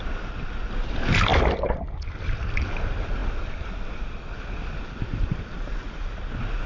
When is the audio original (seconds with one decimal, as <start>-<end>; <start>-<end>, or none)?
0.0-6.7